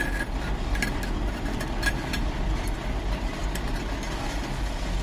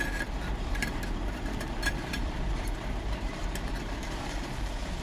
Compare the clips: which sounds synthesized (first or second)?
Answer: second